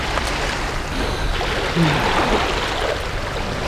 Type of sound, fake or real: real